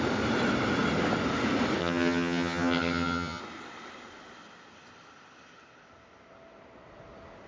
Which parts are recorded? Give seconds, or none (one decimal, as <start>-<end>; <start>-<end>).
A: 0.0-1.8; 3.4-7.5